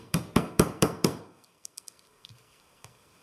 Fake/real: fake